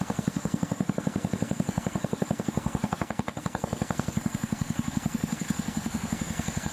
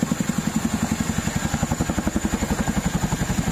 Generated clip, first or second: first